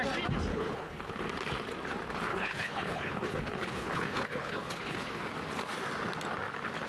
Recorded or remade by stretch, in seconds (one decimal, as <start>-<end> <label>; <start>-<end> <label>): 0.0-0.5 recorded; 0.5-1.2 remade; 1.2-2.3 recorded; 2.3-5.2 remade; 5.2-6.9 recorded